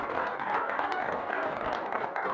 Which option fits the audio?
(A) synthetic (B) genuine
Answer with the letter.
A